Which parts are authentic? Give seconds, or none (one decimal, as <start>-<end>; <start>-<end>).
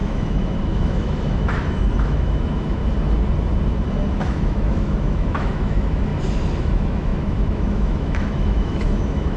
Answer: 2.8-4.1; 6.1-6.6